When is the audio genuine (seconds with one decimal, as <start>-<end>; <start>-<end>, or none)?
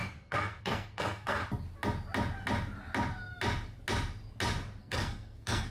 1.4-4.8